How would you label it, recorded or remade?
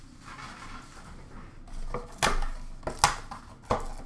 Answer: recorded